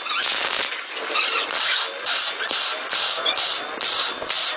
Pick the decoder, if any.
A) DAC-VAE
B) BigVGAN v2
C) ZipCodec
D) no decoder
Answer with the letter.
D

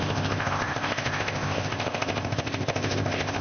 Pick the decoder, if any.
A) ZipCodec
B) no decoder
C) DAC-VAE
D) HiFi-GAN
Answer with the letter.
A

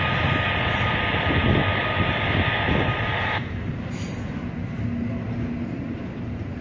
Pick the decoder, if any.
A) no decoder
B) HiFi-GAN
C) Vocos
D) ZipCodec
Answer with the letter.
A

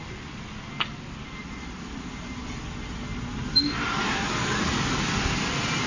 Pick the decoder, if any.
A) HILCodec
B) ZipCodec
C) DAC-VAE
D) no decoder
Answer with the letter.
D